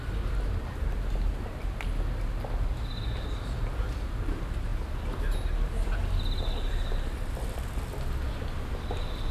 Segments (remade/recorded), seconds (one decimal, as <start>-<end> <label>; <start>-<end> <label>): 0.0-9.3 recorded